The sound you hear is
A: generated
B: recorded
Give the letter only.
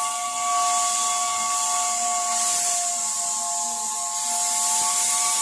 B